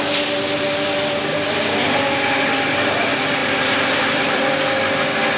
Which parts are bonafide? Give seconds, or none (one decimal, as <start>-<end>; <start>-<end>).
0.0-1.3; 2.0-3.4; 4.4-5.4